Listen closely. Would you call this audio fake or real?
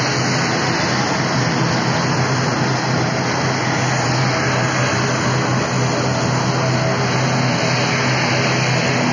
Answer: real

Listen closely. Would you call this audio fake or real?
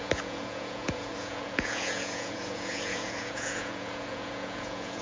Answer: fake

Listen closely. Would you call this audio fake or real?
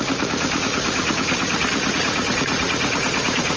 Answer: fake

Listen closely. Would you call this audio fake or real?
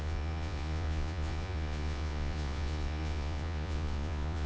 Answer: fake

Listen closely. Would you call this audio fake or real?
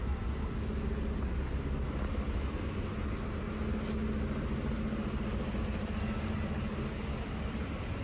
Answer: real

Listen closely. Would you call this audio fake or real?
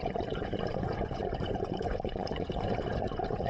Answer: fake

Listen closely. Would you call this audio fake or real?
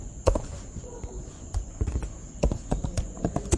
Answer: fake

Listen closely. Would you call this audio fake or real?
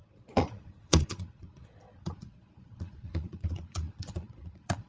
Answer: fake